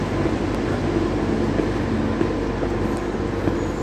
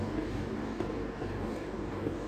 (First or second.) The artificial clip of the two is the second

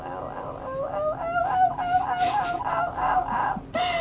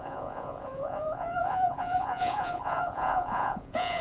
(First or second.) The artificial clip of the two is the second